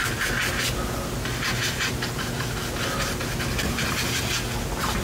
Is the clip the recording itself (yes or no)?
yes